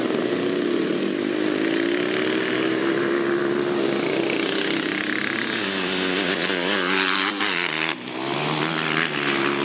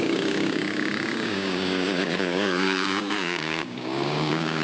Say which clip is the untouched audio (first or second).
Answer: first